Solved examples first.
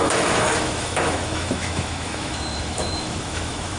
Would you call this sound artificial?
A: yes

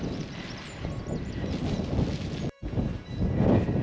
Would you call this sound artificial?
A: no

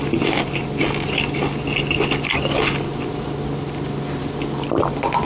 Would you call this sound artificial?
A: no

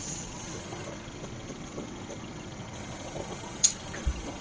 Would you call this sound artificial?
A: yes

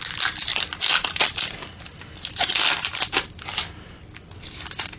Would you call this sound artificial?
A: no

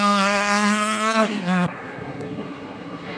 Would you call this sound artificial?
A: yes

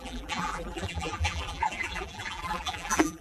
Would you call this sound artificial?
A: yes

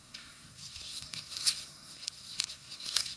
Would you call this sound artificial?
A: yes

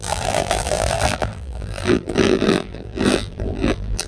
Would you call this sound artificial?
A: yes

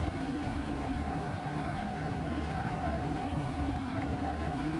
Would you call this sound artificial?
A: yes